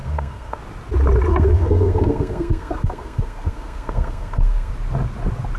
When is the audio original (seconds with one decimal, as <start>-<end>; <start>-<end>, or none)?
0.6-1.3; 4.7-5.6